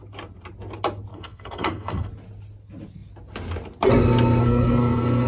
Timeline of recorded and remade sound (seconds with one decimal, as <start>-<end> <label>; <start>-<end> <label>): 0.0-1.1 recorded; 1.1-2.1 remade; 2.1-4.4 recorded; 4.4-5.3 remade